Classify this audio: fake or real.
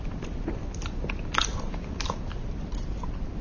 real